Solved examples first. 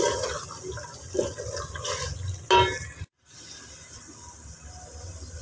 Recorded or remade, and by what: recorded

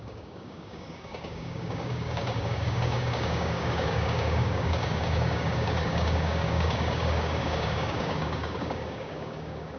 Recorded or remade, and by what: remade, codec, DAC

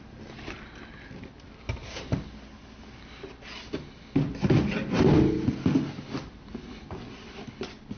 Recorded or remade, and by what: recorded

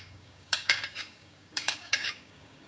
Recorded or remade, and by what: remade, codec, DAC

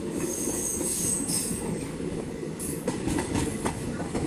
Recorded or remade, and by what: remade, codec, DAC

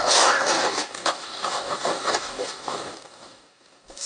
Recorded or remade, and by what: remade, codec, DAC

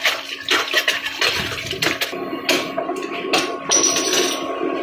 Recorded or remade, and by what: recorded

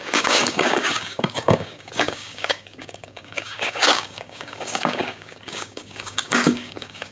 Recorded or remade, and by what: remade, codec, DAC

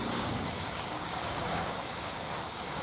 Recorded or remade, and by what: remade, codec, DAC